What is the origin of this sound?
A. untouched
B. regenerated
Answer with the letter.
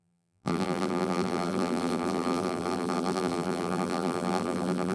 B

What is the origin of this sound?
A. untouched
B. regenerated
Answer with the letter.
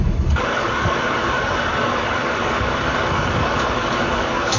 B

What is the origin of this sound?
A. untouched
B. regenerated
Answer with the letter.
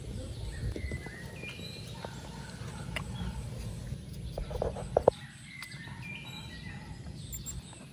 A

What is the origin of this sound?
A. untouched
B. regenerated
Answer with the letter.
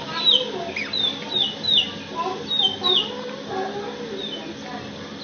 A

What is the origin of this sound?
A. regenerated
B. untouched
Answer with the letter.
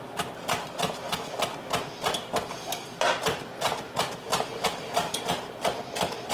B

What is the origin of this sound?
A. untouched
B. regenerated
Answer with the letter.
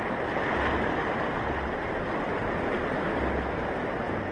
A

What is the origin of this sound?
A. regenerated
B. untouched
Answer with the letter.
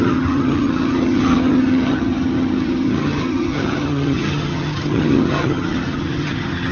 A